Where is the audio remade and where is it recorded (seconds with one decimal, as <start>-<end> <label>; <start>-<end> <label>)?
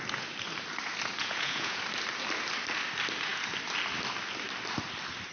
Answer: 0.0-1.2 recorded; 1.2-1.8 remade; 1.8-5.3 recorded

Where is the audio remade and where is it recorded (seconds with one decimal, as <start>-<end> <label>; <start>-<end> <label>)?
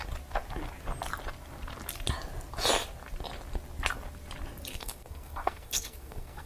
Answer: 0.0-4.7 recorded; 4.7-6.5 remade